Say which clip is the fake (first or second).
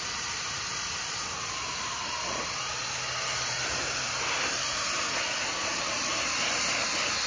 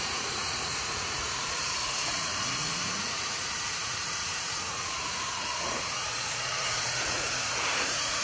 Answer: second